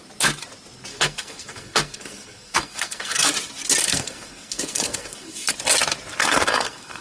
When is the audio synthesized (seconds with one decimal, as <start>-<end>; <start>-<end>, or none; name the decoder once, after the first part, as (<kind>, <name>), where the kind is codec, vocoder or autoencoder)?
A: 0.9-3.3 (codec, SNAC); 3.8-5.5; 6.2-7.0